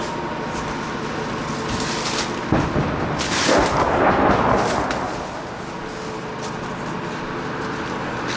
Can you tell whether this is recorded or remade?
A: recorded